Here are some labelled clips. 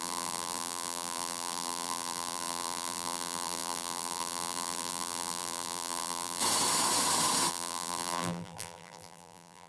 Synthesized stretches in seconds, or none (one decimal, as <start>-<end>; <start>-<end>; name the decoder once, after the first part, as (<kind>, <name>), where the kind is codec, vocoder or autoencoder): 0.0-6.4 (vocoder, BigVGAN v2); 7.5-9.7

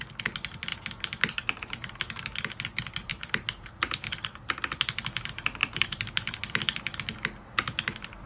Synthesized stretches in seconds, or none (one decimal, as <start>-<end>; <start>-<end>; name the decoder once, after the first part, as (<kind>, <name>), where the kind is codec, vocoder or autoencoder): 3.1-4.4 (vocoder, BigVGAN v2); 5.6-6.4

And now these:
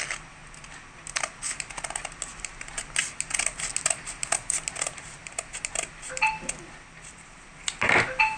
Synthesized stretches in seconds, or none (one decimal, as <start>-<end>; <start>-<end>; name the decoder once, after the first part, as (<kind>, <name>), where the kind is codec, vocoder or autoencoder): none

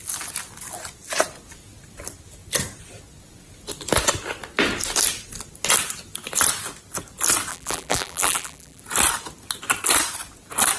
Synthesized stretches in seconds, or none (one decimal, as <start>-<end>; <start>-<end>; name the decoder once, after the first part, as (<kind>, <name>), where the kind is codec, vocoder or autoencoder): 7.5-8.8 (vocoder, BigVGAN v2)